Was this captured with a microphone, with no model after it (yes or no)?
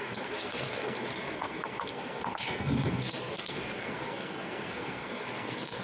no